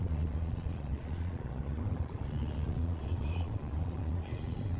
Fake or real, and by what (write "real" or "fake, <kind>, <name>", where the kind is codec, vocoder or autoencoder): fake, vocoder, Vocos